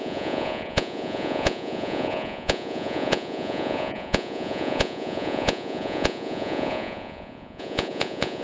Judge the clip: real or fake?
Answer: fake